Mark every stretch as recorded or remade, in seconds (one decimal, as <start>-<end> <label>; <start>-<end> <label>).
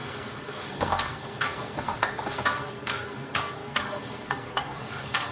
0.0-5.3 remade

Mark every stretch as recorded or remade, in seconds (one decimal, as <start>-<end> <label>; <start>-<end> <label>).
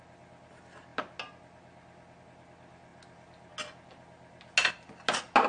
0.0-5.5 recorded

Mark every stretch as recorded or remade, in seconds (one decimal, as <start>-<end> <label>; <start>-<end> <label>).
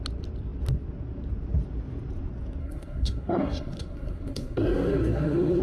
0.0-2.6 recorded; 2.6-5.6 remade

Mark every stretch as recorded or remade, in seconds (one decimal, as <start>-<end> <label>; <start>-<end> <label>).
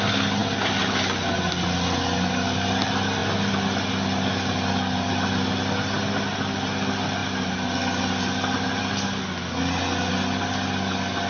0.0-11.3 recorded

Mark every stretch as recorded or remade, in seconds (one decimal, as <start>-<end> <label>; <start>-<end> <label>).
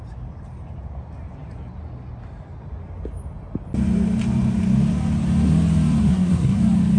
0.0-6.0 recorded; 6.0-6.6 remade; 6.6-7.0 recorded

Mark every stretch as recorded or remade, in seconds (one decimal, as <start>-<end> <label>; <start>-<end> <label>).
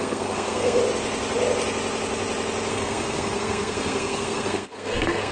0.0-0.8 remade; 0.8-2.7 recorded; 2.7-5.3 remade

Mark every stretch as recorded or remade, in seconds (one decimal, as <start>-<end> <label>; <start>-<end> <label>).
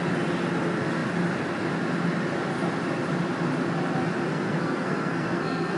0.0-4.3 recorded; 4.3-5.8 remade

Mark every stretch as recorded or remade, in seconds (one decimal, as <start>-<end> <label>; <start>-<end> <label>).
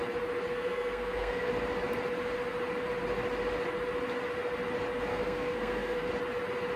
0.0-0.5 recorded; 0.5-1.5 remade; 1.5-5.1 recorded; 5.1-6.1 remade; 6.1-6.8 recorded